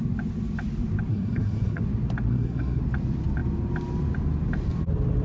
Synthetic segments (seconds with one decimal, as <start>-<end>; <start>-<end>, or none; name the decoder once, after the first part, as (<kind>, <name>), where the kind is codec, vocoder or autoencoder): 1.1-1.8 (codec, SNAC); 2.3-2.8